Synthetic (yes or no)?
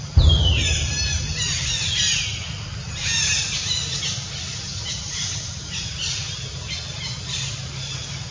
yes